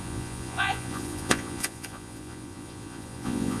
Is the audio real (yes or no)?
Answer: no